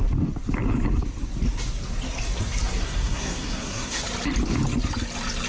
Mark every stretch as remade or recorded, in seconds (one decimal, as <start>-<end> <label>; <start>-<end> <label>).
0.0-2.8 recorded; 2.8-4.0 remade; 4.0-5.5 recorded